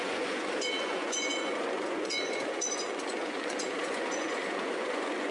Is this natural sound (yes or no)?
no